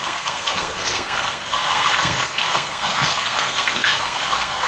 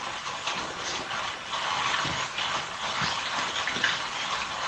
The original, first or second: second